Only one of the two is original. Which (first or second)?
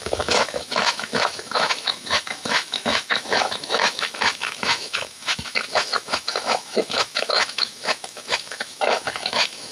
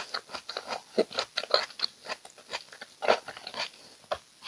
second